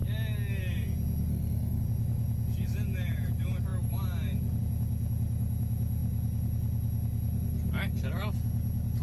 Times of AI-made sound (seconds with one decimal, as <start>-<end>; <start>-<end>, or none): 1.3-1.8